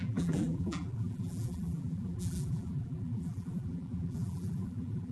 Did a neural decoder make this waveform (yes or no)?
yes